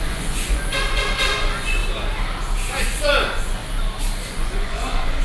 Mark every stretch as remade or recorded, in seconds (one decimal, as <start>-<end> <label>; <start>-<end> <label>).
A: 0.0-1.8 remade; 1.8-2.8 recorded; 2.8-3.6 remade; 3.6-4.3 recorded; 4.3-5.2 remade